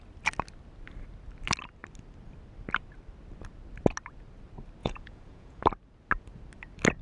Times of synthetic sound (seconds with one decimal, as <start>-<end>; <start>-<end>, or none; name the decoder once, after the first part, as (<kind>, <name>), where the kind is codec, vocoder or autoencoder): 4.8-5.6 (vocoder, Vocos)